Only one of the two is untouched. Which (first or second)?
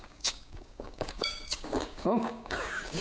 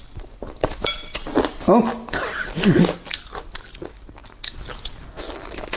second